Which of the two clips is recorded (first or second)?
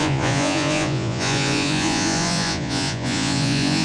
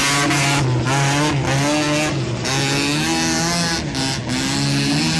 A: second